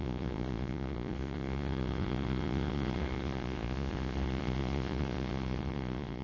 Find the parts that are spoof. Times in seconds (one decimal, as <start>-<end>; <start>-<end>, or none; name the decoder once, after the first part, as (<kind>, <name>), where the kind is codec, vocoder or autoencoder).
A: 0.0-6.2 (vocoder, Vocos)